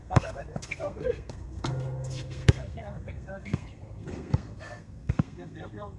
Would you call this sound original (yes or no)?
no